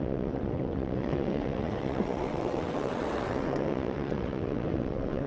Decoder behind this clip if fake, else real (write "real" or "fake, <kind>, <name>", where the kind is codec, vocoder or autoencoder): fake, vocoder, WaveNeXt